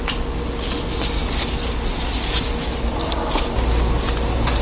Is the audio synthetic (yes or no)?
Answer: no